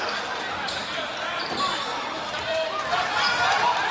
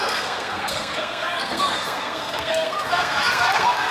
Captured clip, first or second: first